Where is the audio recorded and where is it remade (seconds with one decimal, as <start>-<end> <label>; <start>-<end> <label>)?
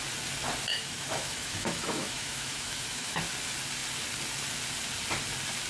0.0-0.7 recorded; 0.7-3.2 remade; 3.2-5.7 recorded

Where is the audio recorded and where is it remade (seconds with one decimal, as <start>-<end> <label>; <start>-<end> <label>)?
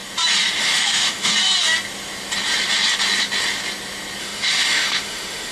0.0-0.6 recorded; 0.6-1.3 remade; 1.3-4.2 recorded; 4.2-5.5 remade